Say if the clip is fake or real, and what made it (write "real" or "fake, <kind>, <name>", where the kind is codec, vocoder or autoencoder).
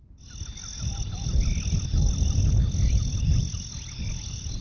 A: real